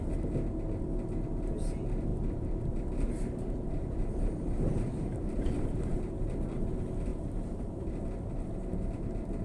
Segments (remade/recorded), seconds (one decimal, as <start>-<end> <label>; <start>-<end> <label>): 0.0-2.1 recorded; 2.1-6.0 remade; 6.0-7.1 recorded; 7.1-8.0 remade; 8.0-9.4 recorded